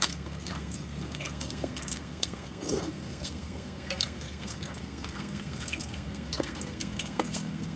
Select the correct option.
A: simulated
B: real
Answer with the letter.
A